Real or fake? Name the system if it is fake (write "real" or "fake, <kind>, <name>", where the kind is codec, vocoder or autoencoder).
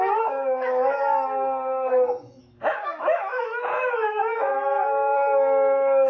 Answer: fake, autoencoder, DAC-VAE